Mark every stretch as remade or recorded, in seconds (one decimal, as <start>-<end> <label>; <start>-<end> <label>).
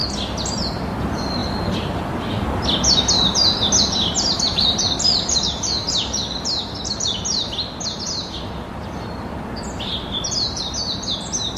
0.0-4.5 recorded; 4.5-6.6 remade; 6.6-11.6 recorded